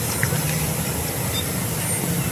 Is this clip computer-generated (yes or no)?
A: no